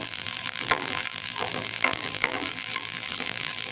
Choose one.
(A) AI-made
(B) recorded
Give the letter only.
A